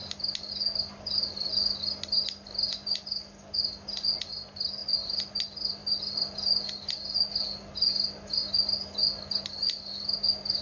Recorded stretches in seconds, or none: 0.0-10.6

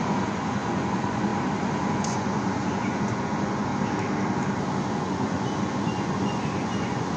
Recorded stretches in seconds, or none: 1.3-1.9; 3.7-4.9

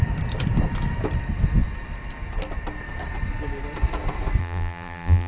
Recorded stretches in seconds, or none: 0.0-4.4

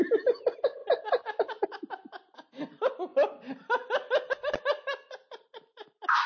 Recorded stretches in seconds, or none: 0.0-5.7

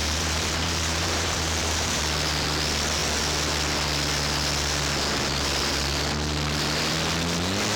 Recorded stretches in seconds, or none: 2.0-7.8

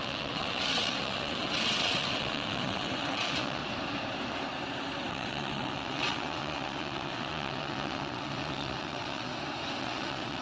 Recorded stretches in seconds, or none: 3.6-5.1; 9.3-9.8

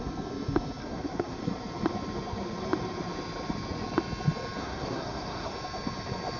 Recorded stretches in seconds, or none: 0.0-0.8; 1.4-4.6; 5.5-6.4